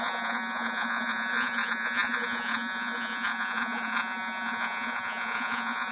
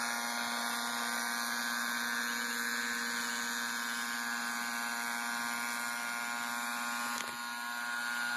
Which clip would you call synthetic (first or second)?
first